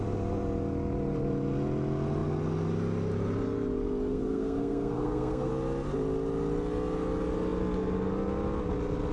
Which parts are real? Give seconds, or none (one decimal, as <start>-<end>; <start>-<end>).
0.0-4.1; 5.5-9.1

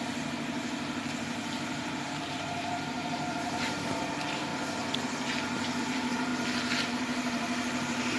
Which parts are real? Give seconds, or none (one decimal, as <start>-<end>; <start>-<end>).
4.5-5.8; 6.3-6.9

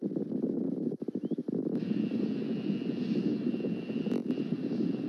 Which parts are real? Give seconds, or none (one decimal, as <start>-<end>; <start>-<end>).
0.0-5.1

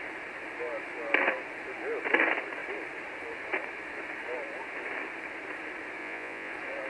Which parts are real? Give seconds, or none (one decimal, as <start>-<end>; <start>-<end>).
0.0-6.0; 6.5-6.9

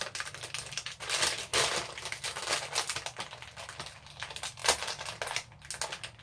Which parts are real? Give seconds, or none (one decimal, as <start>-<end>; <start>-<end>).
0.0-6.2